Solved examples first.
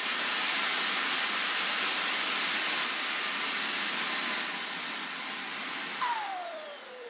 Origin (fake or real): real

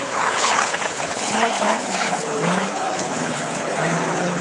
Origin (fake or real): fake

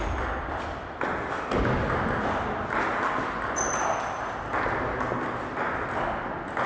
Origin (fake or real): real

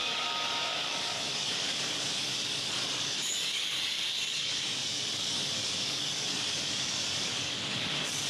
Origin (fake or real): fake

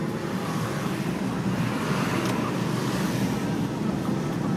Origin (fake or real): real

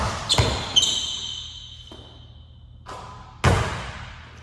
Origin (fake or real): real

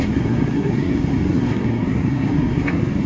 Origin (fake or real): fake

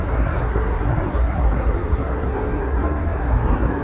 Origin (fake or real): fake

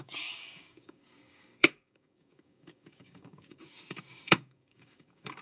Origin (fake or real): fake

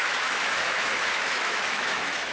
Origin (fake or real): fake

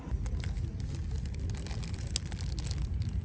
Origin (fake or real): real